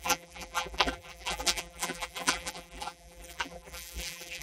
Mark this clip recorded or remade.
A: remade